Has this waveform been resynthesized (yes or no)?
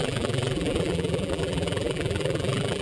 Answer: yes